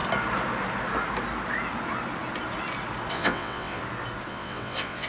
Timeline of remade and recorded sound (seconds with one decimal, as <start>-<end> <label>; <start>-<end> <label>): 0.0-3.1 recorded; 3.1-3.8 remade; 3.8-4.3 recorded; 4.3-5.1 remade